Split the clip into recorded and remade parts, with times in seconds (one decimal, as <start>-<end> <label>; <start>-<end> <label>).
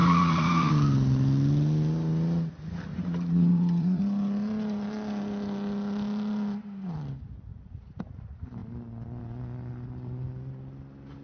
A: 0.0-0.7 remade; 0.7-2.9 recorded; 2.9-4.0 remade; 4.0-11.2 recorded